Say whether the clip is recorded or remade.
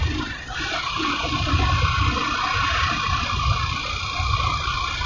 recorded